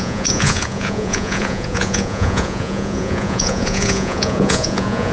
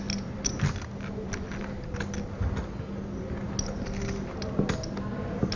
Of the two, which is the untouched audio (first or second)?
second